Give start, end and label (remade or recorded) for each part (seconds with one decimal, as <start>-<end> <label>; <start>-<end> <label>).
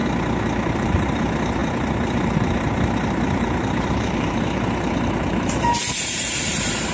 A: 0.0-0.7 recorded; 0.7-6.9 remade